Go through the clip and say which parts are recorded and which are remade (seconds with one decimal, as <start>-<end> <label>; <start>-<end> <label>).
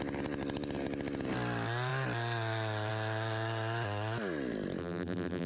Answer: 0.0-4.8 recorded; 4.8-5.5 remade